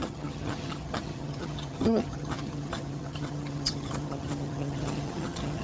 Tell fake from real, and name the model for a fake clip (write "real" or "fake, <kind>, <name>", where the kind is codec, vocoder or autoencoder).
fake, vocoder, HiFi-GAN